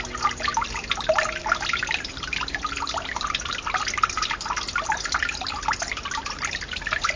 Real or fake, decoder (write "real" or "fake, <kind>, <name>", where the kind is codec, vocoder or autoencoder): real